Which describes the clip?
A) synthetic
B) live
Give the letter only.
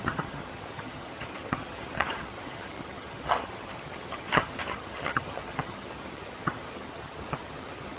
A